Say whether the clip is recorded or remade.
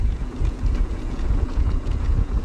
remade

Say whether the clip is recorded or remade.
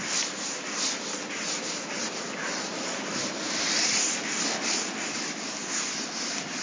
recorded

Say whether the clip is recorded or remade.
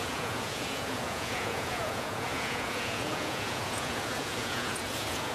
remade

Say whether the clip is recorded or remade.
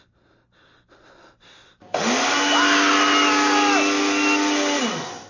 recorded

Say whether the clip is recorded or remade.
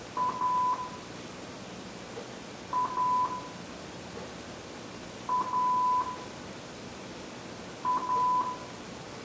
recorded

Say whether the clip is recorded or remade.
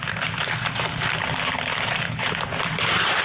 recorded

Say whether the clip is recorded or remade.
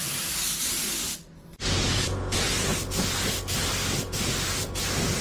recorded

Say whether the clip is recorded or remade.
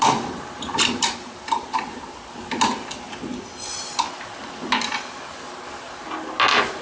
recorded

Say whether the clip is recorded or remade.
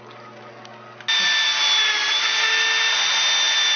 recorded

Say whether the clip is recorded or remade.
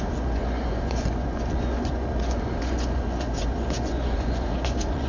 remade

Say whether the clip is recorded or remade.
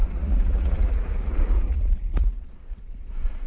remade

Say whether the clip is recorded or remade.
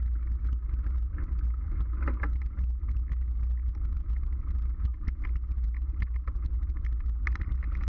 recorded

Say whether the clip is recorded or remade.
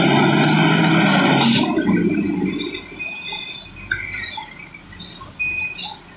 recorded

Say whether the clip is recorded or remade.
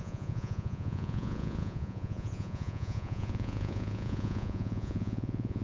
remade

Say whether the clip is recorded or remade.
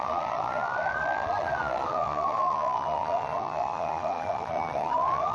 remade